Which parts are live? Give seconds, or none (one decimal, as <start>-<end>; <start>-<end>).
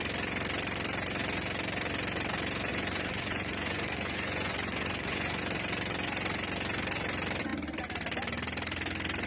0.0-2.7; 5.4-9.3